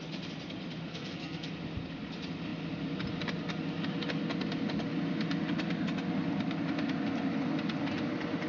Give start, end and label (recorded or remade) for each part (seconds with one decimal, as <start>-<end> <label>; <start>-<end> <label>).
0.0-0.9 recorded; 0.9-1.5 remade; 1.5-8.5 recorded